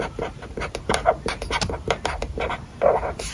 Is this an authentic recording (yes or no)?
no